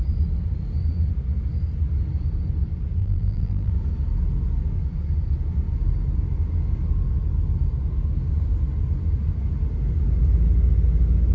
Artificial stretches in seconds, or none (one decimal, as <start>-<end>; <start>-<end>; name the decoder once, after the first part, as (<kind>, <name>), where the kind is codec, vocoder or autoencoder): 3.0-3.7 (vocoder, BigVGAN v2)